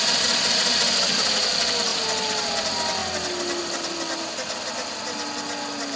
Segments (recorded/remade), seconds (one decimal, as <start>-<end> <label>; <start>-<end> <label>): 0.0-6.0 recorded